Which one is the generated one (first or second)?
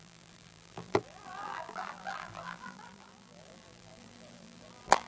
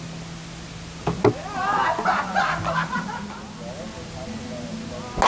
first